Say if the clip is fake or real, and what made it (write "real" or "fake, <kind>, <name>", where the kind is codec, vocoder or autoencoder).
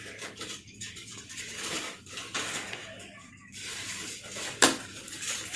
fake, codec, DAC